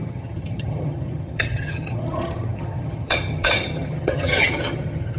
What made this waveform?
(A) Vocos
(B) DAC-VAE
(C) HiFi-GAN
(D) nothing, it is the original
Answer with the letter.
C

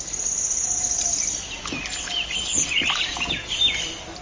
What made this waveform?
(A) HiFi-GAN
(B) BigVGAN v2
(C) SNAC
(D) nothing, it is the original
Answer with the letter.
D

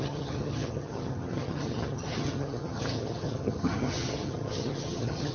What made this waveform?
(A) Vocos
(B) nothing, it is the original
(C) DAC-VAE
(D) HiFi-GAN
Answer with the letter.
D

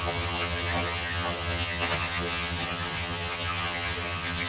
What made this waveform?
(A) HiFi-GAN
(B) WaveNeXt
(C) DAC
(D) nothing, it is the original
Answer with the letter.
A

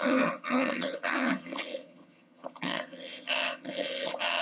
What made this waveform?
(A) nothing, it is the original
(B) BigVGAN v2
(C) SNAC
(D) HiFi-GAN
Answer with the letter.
D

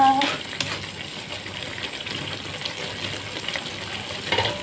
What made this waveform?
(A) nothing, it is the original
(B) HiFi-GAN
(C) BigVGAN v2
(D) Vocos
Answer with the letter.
A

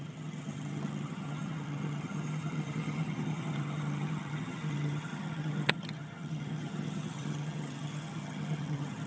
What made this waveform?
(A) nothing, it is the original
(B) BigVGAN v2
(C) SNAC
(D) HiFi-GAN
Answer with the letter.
D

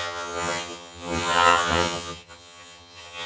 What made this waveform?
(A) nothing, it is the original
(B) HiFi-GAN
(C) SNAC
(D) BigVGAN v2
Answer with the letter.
B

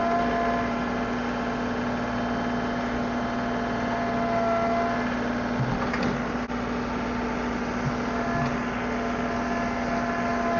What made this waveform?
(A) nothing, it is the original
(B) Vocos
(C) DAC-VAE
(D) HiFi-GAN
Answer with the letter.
A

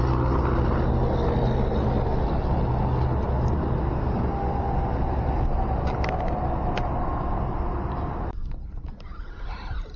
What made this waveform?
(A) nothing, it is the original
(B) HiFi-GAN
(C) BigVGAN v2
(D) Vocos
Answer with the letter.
A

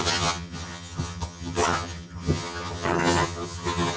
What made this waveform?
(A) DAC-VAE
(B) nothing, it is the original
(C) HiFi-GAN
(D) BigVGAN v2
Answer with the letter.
C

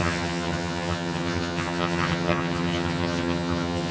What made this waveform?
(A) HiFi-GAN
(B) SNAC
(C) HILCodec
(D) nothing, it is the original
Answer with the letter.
A